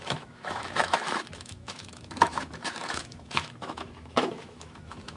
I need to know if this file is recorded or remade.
remade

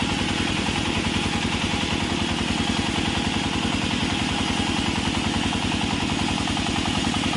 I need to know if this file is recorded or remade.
recorded